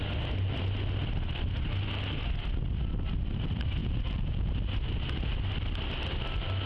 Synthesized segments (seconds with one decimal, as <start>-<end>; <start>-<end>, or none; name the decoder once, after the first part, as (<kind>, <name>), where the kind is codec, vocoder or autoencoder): 3.8-4.5 (vocoder, Vocos)